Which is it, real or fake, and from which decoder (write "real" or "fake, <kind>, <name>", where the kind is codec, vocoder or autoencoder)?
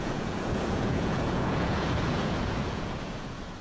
fake, vocoder, Vocos